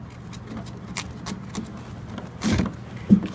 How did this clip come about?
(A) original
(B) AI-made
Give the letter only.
A